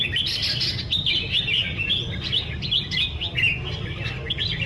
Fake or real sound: real